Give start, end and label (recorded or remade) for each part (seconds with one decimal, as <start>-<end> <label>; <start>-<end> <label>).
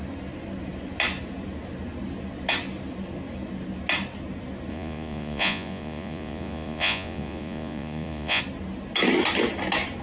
0.0-4.7 recorded; 4.7-8.4 remade; 8.4-10.0 recorded